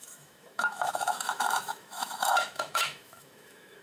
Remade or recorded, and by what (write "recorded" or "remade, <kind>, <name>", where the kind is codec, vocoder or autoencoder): remade, autoencoder, DAC-VAE